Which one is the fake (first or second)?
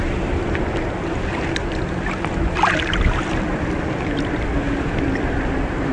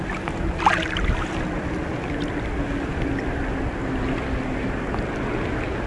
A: first